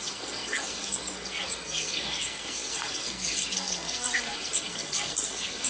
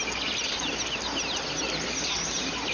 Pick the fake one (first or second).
first